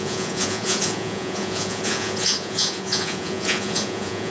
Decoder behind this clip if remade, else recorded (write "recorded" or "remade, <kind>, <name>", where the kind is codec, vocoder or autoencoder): remade, vocoder, Vocos